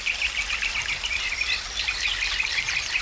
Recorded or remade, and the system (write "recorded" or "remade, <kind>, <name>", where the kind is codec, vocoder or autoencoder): recorded